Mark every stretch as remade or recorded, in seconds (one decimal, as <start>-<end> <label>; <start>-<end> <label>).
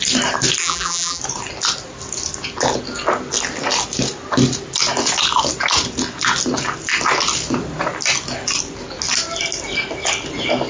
0.0-0.6 recorded; 0.6-1.2 remade; 1.2-10.7 recorded